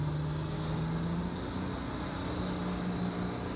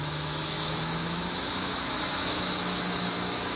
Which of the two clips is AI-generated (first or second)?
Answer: second